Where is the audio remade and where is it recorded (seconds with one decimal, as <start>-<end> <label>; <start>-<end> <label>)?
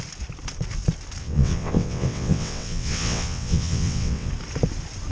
0.0-1.2 recorded; 1.2-4.3 remade; 4.3-5.1 recorded